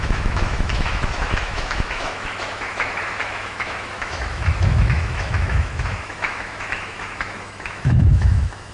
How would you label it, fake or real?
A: fake